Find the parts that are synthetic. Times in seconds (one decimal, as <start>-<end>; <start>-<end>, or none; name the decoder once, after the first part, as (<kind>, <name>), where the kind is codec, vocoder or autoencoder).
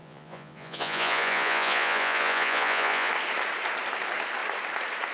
0.0-3.1 (vocoder, Vocos)